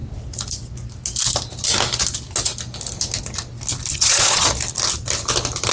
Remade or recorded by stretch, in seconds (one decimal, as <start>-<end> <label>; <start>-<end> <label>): 0.0-3.9 recorded; 3.9-4.5 remade; 4.5-5.7 recorded